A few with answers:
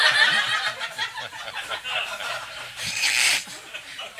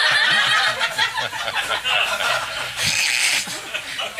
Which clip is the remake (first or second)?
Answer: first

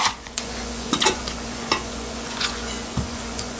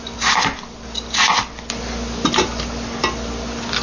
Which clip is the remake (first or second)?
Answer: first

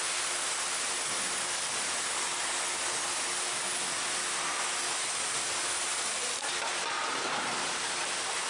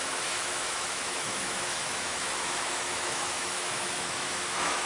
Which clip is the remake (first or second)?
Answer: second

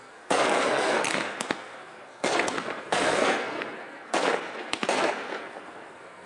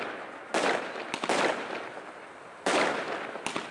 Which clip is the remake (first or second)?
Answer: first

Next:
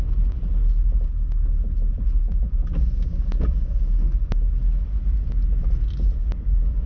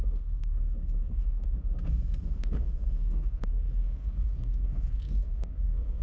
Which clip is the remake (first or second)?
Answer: second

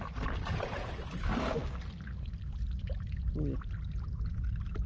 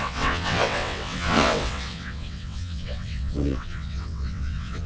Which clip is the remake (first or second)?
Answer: second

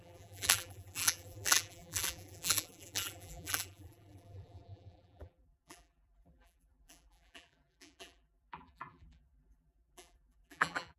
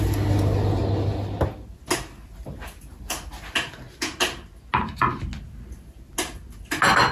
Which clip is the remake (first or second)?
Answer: first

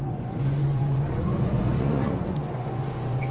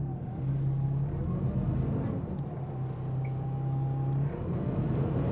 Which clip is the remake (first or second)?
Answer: first